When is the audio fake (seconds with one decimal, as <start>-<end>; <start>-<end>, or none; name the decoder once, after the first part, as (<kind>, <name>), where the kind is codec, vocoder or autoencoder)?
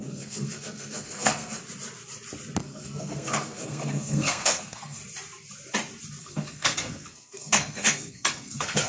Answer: 0.0-1.6 (codec, SNAC); 2.6-5.0; 6.2-8.9